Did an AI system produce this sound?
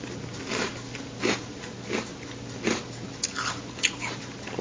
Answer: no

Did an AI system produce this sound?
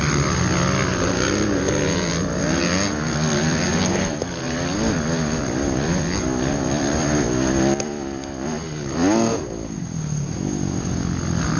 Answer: no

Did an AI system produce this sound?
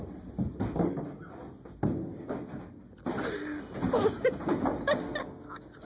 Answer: no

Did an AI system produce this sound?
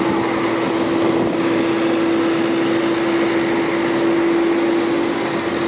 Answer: no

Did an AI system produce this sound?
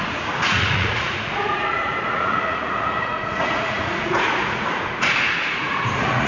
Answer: yes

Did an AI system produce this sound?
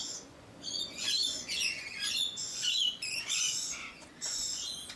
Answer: yes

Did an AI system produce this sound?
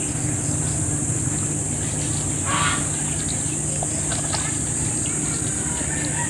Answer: no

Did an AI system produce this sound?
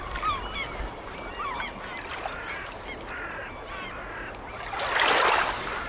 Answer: no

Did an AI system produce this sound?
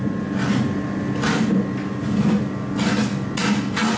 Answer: no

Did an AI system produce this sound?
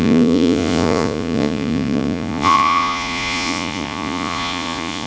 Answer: yes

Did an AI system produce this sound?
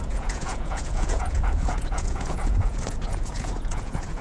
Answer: yes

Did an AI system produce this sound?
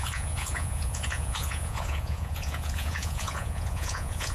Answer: yes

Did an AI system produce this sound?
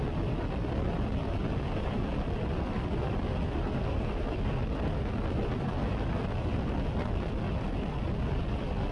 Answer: no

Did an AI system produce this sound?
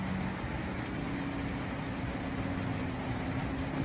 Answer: no